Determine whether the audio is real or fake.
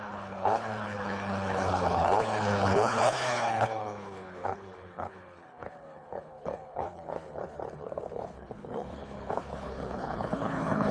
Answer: fake